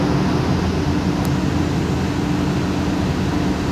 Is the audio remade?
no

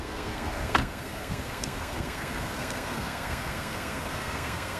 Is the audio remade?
yes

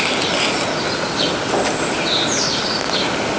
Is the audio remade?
no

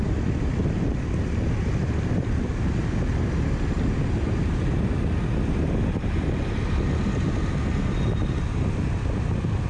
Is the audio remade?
no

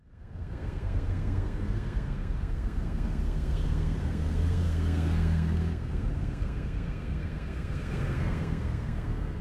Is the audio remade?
yes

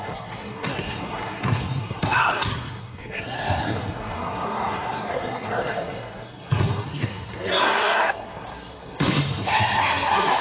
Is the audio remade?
yes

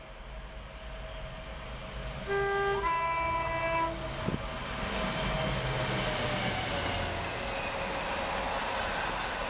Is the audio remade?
no